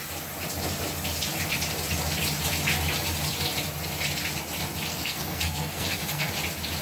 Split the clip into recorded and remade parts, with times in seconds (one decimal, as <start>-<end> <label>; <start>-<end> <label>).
0.0-4.9 recorded; 4.9-6.3 remade; 6.3-6.8 recorded